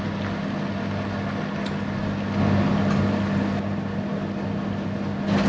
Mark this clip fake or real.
real